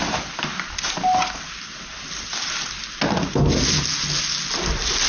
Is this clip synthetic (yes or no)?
no